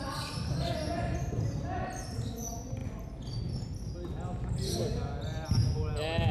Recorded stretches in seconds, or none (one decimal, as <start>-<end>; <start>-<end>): 0.0-6.3